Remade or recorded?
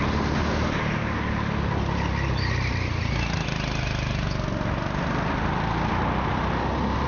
recorded